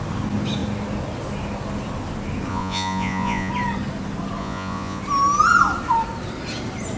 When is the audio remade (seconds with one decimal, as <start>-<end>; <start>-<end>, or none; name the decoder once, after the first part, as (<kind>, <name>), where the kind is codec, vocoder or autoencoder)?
2.5-3.5 (vocoder, Vocos); 4.4-5.0